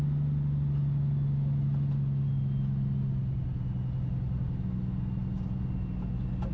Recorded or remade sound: recorded